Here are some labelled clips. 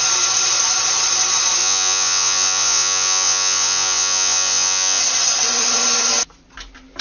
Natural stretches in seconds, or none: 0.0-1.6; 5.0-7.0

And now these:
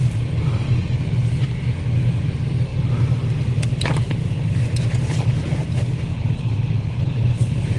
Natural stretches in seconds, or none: 0.0-6.1

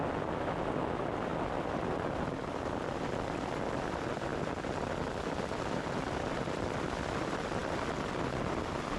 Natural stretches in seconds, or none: 4.3-5.6; 7.6-8.4